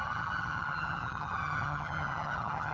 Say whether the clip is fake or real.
fake